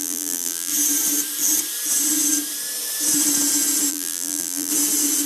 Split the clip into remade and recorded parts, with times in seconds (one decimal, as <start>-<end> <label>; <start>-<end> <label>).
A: 0.0-0.7 remade; 0.7-3.9 recorded; 3.9-4.7 remade; 4.7-5.3 recorded

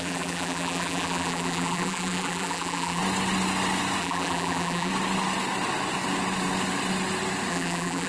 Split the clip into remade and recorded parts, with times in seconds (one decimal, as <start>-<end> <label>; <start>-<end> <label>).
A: 0.0-3.0 remade; 3.0-4.0 recorded; 4.0-4.9 remade; 4.9-7.5 recorded; 7.5-8.1 remade

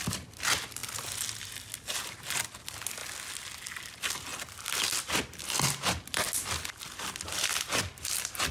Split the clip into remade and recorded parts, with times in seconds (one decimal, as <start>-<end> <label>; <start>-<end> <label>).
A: 0.0-3.0 remade; 3.0-3.6 recorded; 3.6-4.3 remade; 4.3-6.8 recorded; 6.8-8.5 remade

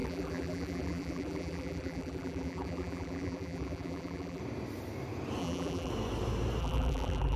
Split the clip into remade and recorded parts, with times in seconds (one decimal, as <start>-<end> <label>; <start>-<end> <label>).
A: 0.0-4.4 remade; 4.4-5.4 recorded; 5.4-5.9 remade; 5.9-6.6 recorded; 6.6-7.4 remade

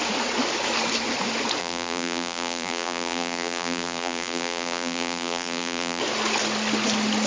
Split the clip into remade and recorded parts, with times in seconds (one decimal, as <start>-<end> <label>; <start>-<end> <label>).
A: 0.0-1.6 recorded; 1.6-6.0 remade; 6.0-7.3 recorded

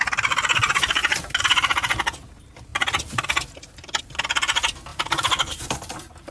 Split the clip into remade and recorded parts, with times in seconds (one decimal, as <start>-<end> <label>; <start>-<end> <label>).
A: 0.0-4.9 recorded; 4.9-6.3 remade